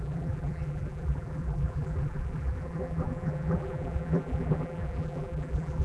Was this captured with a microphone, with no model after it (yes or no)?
no